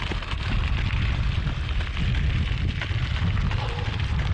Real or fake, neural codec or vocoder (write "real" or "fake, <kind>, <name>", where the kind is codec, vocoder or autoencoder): real